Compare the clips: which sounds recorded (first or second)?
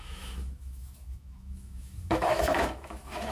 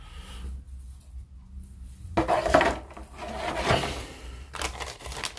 second